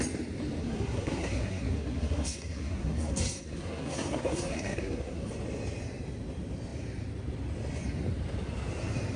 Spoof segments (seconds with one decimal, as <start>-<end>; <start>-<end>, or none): 0.6-5.3